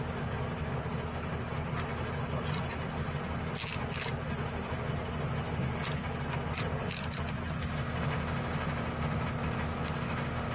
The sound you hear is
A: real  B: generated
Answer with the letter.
A